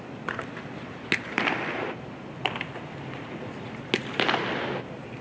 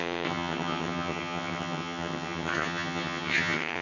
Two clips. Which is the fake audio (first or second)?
second